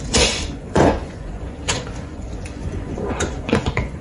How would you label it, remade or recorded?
remade